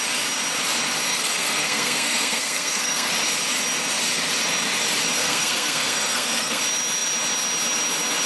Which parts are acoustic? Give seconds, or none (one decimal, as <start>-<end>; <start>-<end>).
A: 0.0-1.1; 3.1-5.2; 6.6-8.3